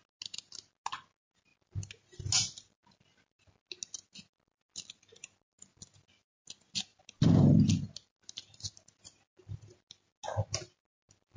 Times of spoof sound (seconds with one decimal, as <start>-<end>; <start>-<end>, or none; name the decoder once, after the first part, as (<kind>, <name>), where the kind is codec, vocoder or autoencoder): none